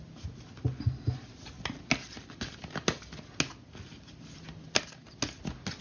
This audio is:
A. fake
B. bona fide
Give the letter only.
B